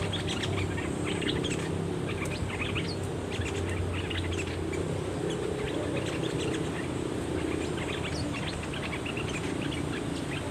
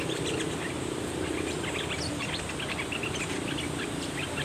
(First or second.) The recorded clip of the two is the first